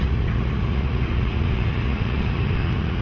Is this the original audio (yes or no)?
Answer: no